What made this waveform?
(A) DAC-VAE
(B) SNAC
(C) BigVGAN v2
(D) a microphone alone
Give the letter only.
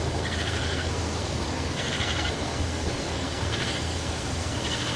B